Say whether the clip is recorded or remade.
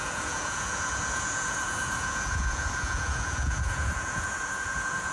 remade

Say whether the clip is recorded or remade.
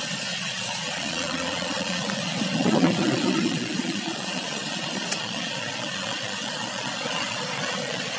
remade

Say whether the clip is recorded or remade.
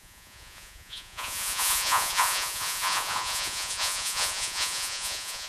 remade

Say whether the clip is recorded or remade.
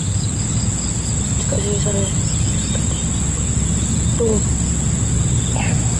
recorded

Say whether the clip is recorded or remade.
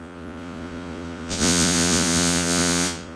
remade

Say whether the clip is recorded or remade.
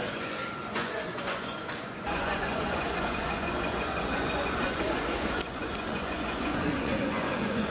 remade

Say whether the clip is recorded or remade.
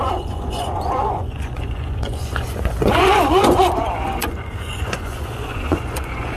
remade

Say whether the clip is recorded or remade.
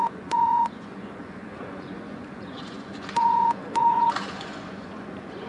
remade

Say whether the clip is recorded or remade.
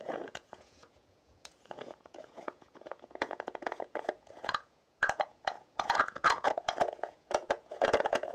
remade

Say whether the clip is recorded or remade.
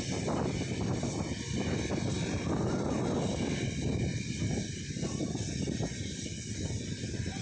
recorded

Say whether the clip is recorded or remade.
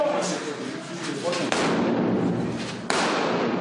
recorded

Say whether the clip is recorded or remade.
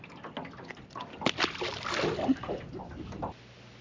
recorded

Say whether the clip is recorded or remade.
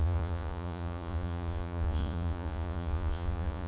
remade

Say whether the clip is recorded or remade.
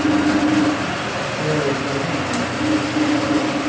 recorded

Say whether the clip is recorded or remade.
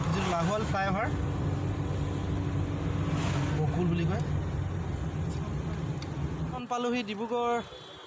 recorded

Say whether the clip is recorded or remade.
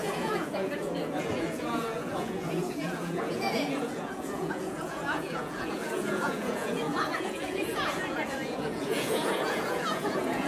remade